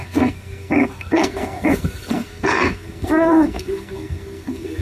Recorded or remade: remade